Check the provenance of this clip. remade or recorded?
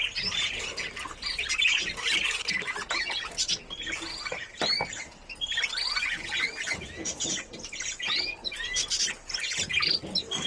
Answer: recorded